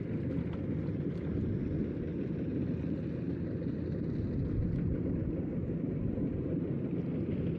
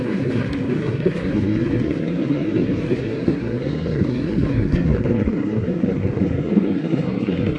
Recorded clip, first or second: first